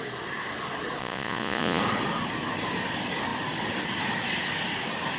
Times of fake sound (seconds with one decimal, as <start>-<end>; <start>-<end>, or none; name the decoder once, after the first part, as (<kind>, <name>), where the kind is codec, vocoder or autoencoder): 1.0-1.8 (vocoder, Vocos)